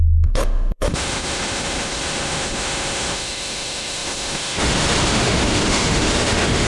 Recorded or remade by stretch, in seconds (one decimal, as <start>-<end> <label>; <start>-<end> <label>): 0.0-6.7 remade